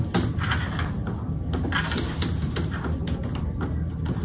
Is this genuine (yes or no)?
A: yes